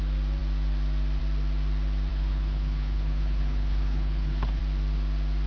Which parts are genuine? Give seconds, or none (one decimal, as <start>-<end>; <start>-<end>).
0.0-2.1; 4.6-5.5